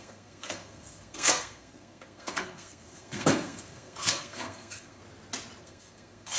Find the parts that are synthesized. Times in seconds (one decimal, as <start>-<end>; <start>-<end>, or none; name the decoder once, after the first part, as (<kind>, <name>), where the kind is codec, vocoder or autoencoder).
0.0-5.0 (codec, SNAC); 5.6-6.4